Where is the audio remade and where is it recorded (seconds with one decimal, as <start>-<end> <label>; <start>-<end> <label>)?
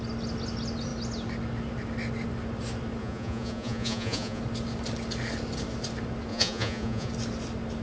0.0-3.0 recorded; 3.0-4.4 remade; 4.4-6.3 recorded; 6.3-7.1 remade; 7.1-7.8 recorded